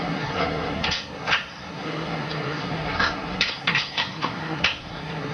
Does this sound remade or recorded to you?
remade